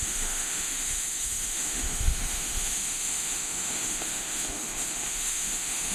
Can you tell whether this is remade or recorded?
remade